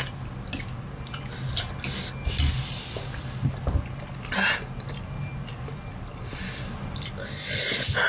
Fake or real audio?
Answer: real